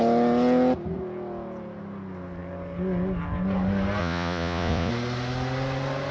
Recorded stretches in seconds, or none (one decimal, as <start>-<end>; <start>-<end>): 0.0-4.0; 4.9-6.1